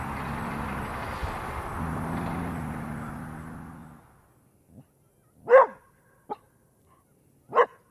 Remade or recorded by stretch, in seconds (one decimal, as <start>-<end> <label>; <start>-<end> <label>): 0.0-7.9 recorded